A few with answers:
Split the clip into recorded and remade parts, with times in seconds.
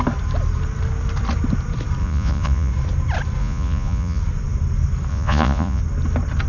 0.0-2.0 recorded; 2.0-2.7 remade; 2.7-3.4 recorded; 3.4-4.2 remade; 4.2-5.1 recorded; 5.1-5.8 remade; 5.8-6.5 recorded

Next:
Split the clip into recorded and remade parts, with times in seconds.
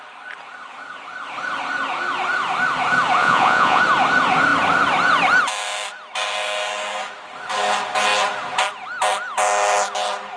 0.0-3.2 recorded; 3.2-3.8 remade; 3.8-10.4 recorded